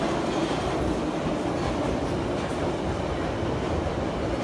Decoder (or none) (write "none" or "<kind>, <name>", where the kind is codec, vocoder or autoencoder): none